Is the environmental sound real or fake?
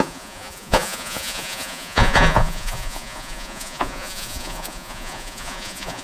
fake